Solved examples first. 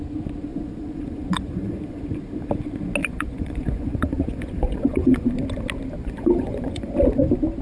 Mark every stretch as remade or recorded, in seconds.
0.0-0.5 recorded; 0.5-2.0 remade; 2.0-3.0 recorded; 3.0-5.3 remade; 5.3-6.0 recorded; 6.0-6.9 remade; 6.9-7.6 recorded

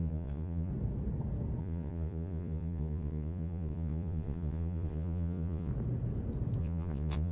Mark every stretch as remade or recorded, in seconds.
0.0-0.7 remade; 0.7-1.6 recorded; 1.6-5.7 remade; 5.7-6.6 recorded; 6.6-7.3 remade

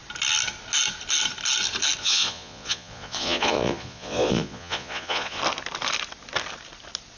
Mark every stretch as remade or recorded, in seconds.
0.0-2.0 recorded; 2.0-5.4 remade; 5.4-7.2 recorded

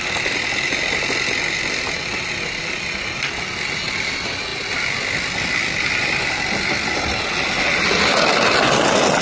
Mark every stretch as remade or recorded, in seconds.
0.0-9.2 recorded